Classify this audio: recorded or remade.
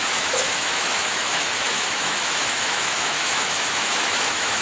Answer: remade